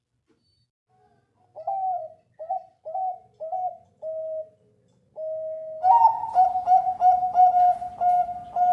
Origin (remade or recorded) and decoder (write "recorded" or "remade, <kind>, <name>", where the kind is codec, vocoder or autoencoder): recorded